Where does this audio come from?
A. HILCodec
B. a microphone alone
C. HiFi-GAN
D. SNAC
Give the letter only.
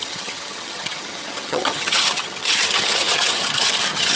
C